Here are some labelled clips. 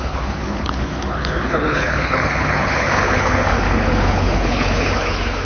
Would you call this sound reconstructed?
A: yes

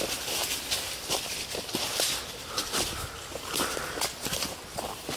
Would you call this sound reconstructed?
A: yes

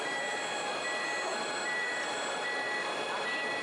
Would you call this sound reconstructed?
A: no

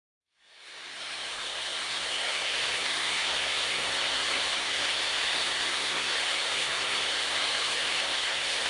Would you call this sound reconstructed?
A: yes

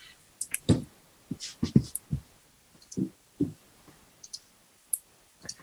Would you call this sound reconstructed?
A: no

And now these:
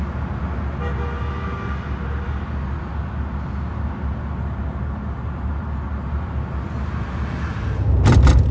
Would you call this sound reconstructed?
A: no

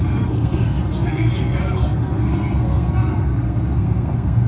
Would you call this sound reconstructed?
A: yes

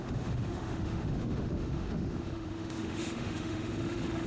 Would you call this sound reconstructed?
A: yes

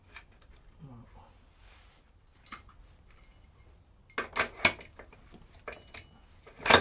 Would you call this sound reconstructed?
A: no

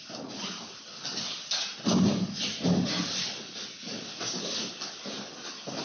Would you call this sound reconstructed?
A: no